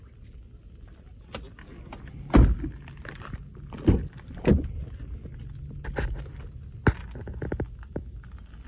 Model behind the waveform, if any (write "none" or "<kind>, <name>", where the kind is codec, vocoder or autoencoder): none